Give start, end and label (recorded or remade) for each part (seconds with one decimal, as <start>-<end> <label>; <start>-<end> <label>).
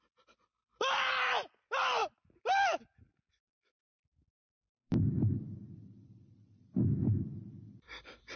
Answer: 0.0-2.0 remade; 2.0-3.8 recorded; 3.8-8.4 remade